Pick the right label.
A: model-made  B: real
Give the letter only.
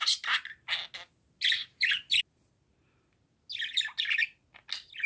B